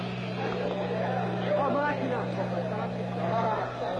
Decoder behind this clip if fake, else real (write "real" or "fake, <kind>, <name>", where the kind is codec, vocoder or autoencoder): real